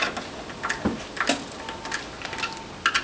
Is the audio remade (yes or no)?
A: no